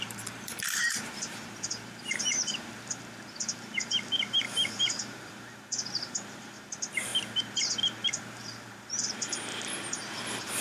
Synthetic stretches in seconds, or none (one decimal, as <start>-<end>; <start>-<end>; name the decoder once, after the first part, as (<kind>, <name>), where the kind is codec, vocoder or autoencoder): 0.0-7.1 (vocoder, BigVGAN v2); 8.1-10.6